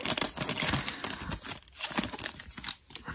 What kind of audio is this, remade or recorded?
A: recorded